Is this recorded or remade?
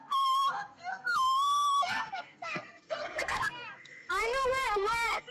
remade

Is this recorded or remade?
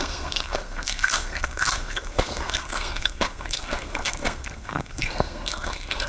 remade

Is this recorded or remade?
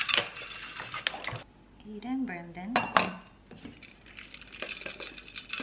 recorded